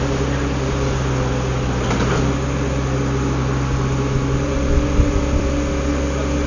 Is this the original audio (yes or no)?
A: yes